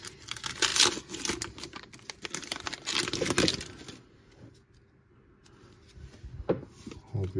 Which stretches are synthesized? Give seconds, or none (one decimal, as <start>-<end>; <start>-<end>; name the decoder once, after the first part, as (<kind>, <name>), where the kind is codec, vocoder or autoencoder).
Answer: none